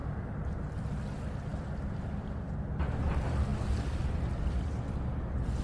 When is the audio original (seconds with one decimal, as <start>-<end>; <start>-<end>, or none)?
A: 0.6-1.5; 2.5-5.6